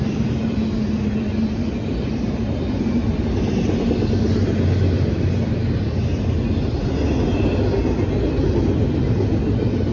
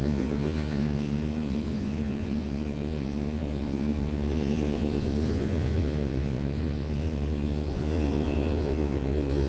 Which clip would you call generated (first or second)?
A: second